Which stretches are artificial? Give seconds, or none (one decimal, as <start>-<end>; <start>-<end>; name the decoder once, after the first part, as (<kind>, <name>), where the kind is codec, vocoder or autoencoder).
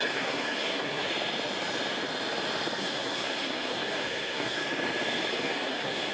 0.0-1.1 (codec, SNAC); 2.8-4.6; 5.3-6.1